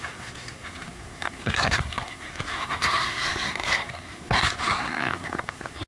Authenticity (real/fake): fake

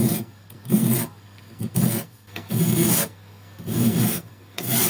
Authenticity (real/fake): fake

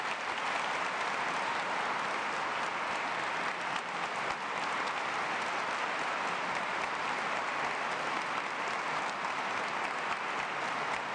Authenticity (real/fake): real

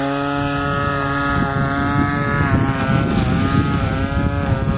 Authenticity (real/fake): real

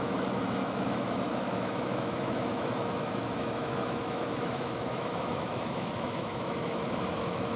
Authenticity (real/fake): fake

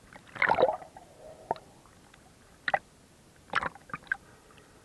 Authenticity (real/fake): real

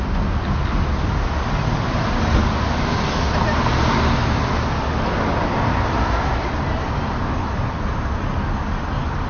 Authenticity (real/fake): real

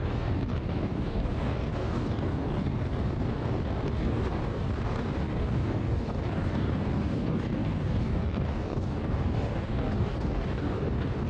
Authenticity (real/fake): fake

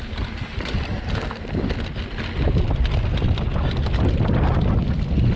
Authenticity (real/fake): real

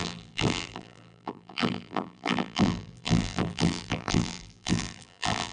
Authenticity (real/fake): fake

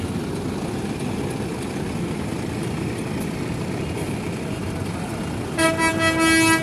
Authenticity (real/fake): real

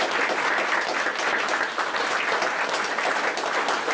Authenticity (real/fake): real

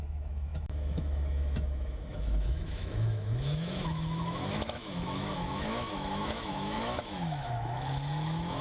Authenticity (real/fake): fake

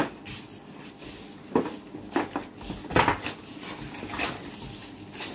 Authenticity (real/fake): real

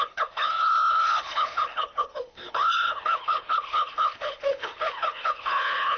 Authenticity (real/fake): fake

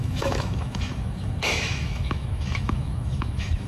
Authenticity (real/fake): fake